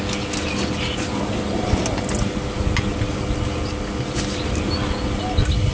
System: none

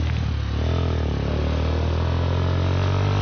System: none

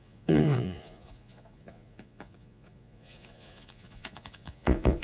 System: vocoder, Vocos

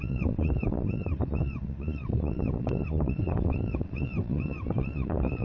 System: vocoder, WaveNeXt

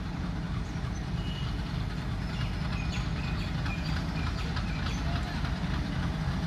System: none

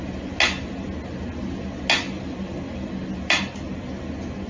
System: none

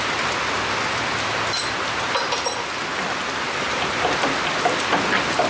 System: none